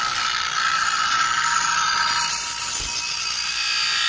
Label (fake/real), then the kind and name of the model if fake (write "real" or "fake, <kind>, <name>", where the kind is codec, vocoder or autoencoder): real